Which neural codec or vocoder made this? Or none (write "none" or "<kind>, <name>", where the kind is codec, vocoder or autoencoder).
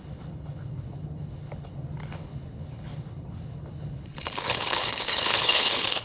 codec, HILCodec